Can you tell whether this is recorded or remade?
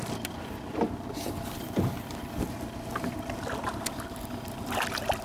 recorded